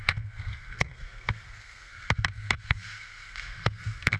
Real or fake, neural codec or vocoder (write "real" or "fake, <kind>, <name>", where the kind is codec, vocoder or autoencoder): fake, codec, SNAC